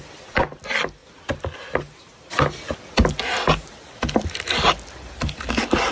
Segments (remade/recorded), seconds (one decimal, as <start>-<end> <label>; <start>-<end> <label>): 0.0-5.9 recorded